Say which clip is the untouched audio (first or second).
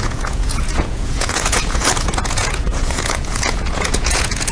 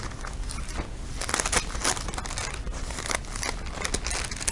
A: second